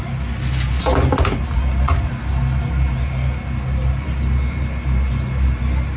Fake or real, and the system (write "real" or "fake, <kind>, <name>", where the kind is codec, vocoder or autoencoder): real